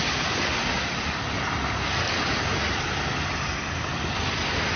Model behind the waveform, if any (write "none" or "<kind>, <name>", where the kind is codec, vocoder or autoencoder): none